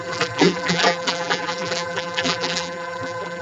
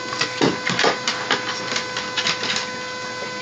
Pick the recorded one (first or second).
second